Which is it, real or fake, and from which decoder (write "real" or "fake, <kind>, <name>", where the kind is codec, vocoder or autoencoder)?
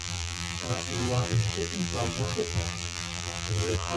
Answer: fake, vocoder, BigVGAN v2